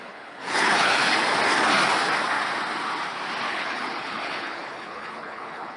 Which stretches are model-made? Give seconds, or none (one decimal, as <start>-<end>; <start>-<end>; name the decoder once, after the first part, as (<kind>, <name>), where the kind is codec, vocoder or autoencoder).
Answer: 0.0-1.0 (codec, HILCodec); 3.5-5.8